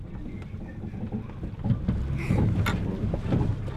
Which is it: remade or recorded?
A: recorded